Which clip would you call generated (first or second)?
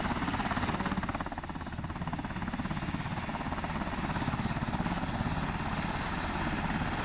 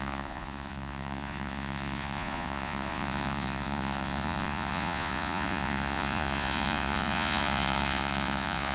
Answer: second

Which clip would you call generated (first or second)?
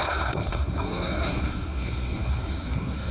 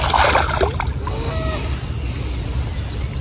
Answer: first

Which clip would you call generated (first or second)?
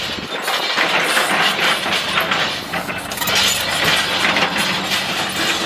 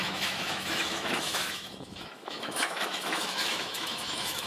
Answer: second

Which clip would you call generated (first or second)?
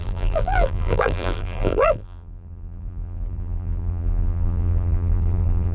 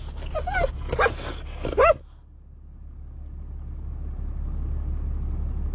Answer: first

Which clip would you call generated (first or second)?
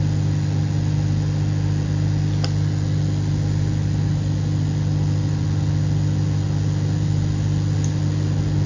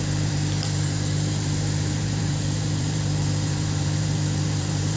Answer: second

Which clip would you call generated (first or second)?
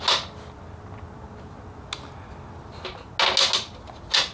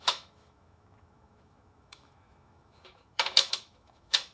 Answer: second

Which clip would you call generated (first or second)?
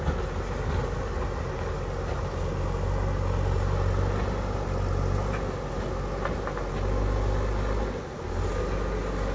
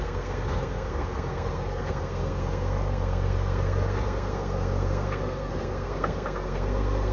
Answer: second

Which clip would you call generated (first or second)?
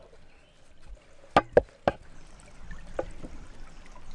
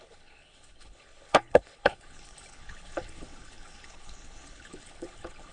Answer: second